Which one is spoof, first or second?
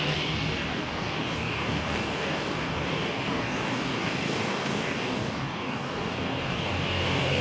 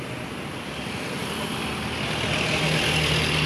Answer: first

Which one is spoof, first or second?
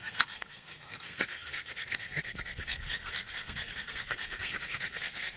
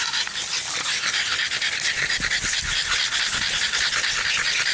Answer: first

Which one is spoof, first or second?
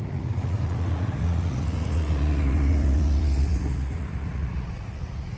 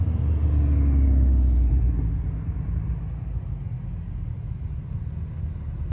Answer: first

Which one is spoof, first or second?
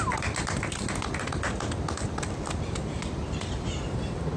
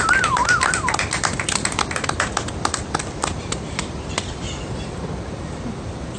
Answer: second